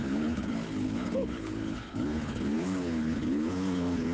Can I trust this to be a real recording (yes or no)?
no